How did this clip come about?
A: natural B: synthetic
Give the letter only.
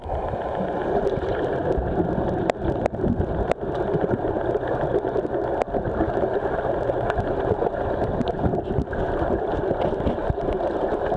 A